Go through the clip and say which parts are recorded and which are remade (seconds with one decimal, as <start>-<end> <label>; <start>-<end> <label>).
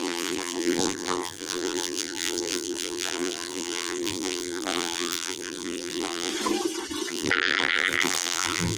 0.0-6.3 remade; 6.3-7.1 recorded; 7.1-8.8 remade